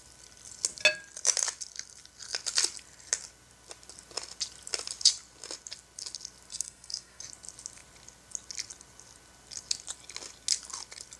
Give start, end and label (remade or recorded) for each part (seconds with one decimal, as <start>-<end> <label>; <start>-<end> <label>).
0.0-6.5 recorded; 6.5-7.2 remade; 7.2-11.2 recorded